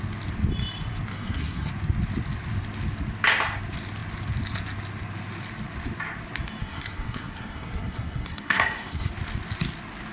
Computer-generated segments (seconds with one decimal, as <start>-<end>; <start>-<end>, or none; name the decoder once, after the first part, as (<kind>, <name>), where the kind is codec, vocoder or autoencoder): 1.1-1.7 (codec, SNAC); 6.6-9.1